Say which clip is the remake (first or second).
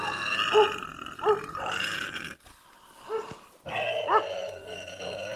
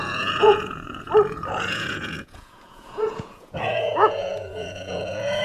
second